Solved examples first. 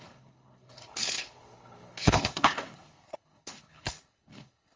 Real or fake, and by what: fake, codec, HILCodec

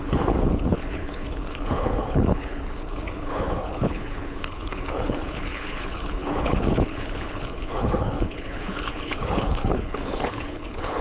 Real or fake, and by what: fake, codec, HILCodec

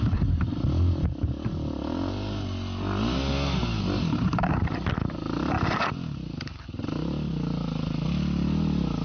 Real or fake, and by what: real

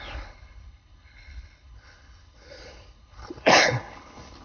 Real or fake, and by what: fake, codec, HILCodec